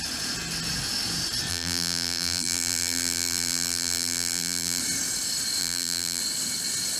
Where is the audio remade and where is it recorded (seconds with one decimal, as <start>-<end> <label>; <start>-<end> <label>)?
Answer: 0.0-1.5 recorded; 1.5-4.8 remade; 4.8-5.6 recorded; 5.6-6.2 remade; 6.2-7.0 recorded